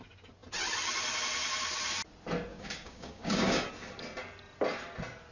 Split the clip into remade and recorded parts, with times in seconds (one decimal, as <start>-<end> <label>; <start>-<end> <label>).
0.0-2.5 recorded; 2.5-3.7 remade; 3.7-5.3 recorded